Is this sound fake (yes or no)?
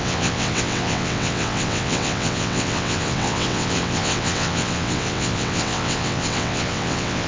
yes